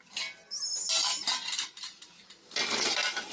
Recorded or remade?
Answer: recorded